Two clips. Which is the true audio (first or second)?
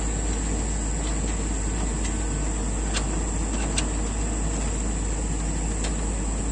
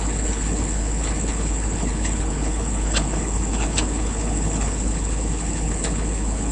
first